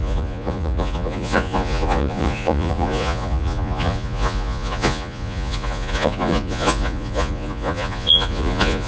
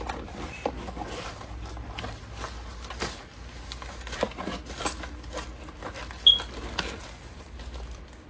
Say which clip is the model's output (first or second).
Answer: first